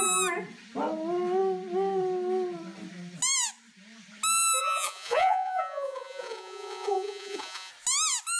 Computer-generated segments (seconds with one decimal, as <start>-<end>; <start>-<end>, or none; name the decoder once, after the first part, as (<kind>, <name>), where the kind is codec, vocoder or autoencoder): 4.6-7.7 (vocoder, Vocos)